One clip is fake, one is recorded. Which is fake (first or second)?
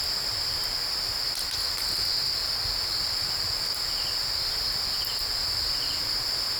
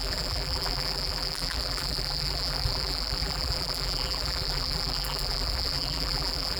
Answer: second